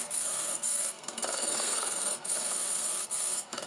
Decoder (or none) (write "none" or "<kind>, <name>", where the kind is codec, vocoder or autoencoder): codec, SNAC